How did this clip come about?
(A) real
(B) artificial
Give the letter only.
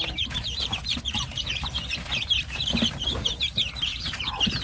B